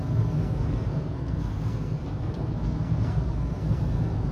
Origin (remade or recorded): remade